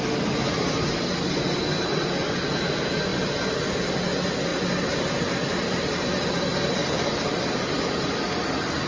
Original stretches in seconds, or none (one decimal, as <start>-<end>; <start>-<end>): 0.0-3.1; 3.7-6.8; 7.9-8.9